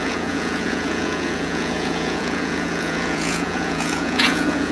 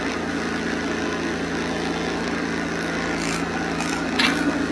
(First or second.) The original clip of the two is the second